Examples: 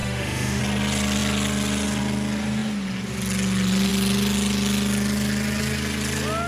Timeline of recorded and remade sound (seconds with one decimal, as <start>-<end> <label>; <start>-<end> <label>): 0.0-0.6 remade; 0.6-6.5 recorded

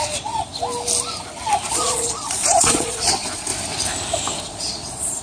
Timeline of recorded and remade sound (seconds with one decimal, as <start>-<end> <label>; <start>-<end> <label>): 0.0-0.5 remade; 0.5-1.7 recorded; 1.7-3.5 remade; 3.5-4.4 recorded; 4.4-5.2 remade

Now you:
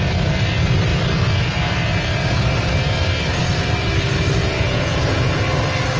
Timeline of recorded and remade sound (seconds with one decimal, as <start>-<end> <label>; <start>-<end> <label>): 0.0-4.4 recorded; 4.4-5.4 remade; 5.4-6.0 recorded

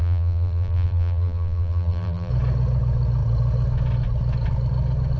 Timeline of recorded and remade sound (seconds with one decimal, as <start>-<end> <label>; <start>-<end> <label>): 0.0-2.3 remade; 2.3-5.2 recorded